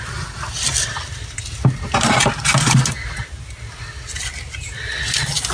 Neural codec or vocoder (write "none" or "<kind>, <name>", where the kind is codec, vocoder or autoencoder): none